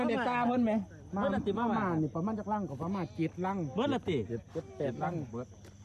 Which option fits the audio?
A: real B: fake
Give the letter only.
A